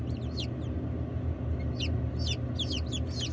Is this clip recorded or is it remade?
recorded